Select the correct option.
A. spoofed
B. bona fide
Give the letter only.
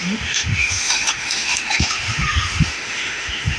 A